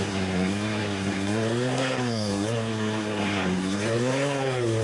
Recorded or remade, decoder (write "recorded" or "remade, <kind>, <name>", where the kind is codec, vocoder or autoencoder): remade, codec, SNAC